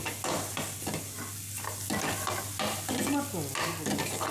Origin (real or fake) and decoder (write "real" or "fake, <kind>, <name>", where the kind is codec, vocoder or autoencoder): real